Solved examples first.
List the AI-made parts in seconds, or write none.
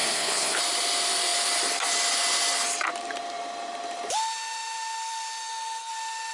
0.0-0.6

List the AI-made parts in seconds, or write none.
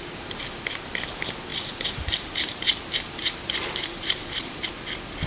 1.5-4.7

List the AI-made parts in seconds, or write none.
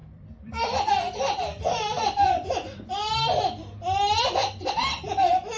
0.0-3.4; 4.4-5.6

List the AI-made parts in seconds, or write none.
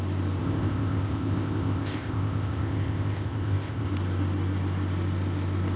0.4-3.9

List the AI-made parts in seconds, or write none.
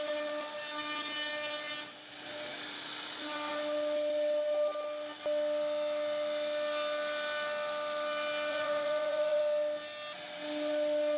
8.5-9.4